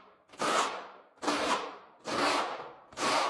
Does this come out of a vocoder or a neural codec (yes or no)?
yes